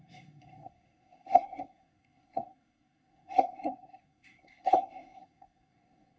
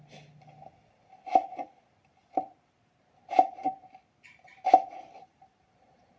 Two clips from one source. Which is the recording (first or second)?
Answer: second